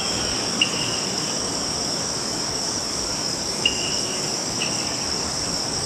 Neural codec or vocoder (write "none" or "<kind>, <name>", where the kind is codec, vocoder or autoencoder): codec, DAC